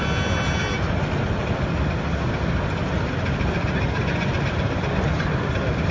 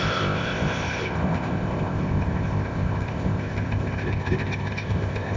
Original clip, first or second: first